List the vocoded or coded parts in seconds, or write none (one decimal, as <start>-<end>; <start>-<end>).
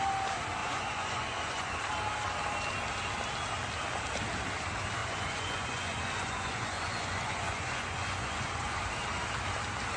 0.6-1.8; 5.0-8.9